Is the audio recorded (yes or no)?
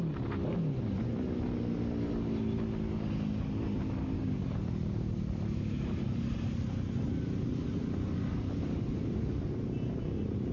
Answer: yes